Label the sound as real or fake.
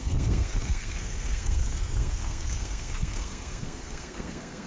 fake